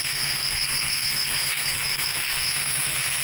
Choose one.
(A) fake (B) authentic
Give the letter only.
A